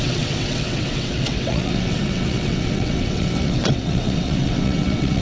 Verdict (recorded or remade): remade